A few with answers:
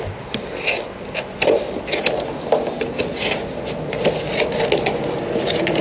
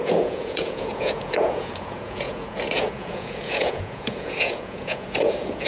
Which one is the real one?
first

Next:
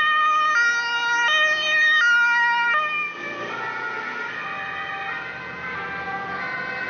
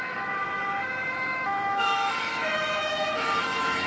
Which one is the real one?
first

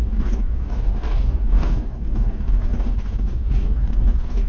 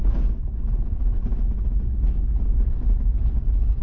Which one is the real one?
second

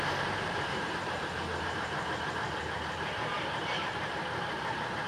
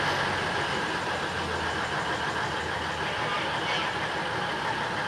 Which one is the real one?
second